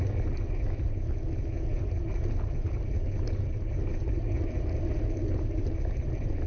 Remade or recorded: recorded